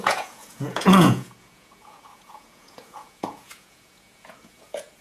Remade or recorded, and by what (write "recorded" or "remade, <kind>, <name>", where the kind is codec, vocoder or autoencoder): remade, vocoder, Vocos